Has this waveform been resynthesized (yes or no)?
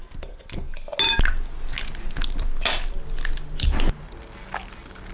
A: no